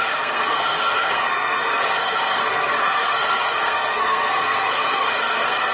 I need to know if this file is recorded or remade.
remade